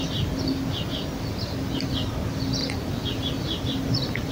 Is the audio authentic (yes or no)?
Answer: yes